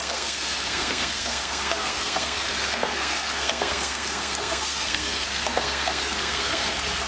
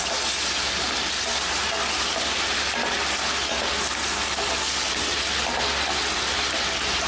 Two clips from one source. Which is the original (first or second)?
second